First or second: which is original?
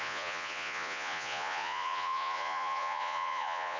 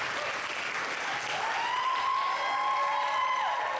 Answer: second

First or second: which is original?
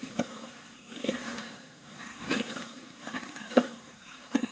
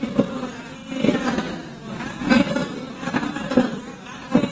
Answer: second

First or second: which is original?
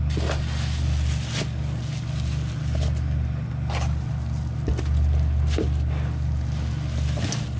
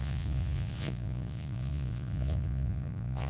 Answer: first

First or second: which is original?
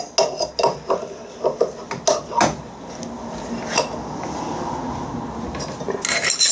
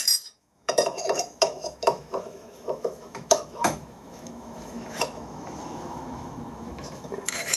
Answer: first